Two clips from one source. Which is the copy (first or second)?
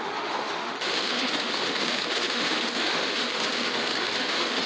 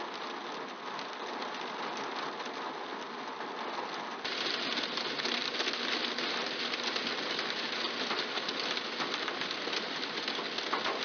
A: first